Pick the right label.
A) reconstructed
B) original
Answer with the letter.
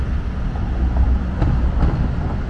B